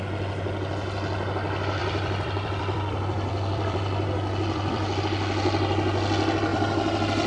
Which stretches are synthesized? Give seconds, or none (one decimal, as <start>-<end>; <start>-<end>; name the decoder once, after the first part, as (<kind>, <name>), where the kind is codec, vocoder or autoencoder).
1.8-5.0 (vocoder, BigVGAN v2); 6.5-7.3